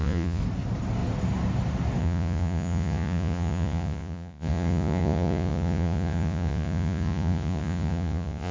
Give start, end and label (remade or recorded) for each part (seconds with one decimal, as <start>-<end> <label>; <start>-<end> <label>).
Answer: 0.0-0.4 remade; 0.4-2.0 recorded; 2.0-8.5 remade